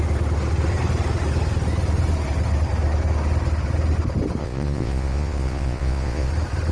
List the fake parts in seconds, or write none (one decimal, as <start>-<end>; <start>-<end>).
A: 4.4-6.3